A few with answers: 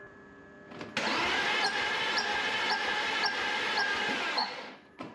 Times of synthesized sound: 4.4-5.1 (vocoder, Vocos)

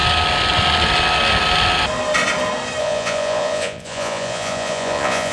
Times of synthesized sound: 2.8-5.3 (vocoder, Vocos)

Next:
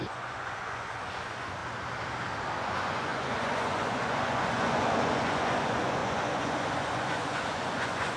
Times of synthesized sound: 0.0-1.6 (vocoder, Vocos); 2.6-8.2

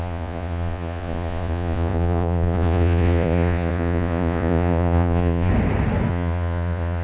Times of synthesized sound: 0.0-5.5 (vocoder, Vocos); 6.1-7.0